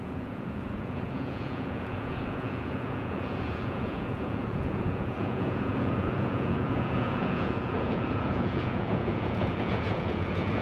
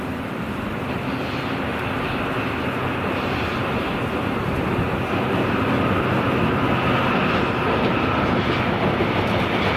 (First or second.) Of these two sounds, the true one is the second